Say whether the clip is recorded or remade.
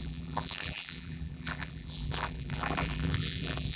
remade